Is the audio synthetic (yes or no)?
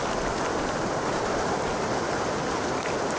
no